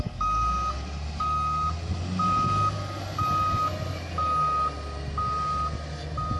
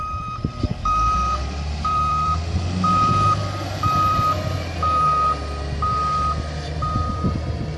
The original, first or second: first